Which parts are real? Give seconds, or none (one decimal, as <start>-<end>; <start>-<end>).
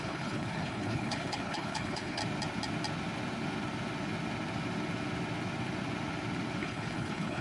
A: 2.2-6.6